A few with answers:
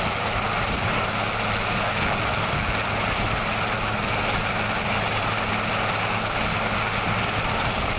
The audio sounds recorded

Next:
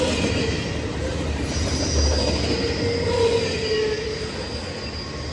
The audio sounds recorded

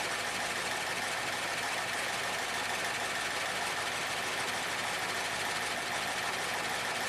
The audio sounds recorded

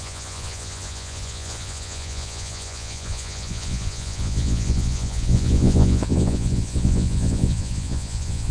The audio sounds remade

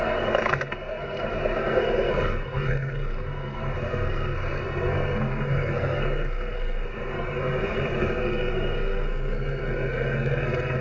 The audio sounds remade